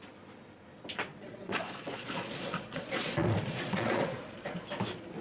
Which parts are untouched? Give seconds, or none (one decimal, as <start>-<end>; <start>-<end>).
0.0-1.1; 4.2-5.2

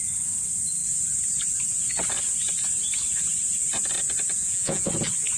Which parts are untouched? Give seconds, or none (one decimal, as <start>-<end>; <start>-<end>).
0.0-4.4; 4.9-5.4

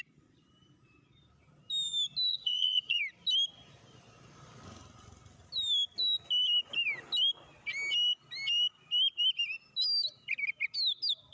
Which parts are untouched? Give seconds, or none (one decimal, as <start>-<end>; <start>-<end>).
0.0-2.3; 3.0-11.3

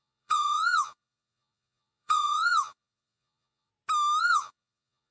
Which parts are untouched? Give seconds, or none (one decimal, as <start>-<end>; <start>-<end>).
3.7-4.2